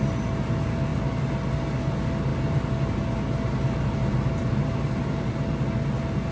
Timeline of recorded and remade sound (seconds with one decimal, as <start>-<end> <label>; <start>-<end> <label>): 0.0-6.3 recorded